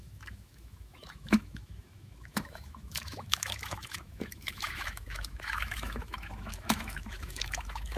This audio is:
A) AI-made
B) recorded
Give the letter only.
A